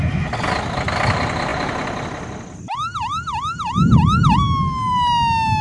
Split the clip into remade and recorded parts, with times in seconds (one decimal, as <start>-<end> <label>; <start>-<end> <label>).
0.0-5.6 recorded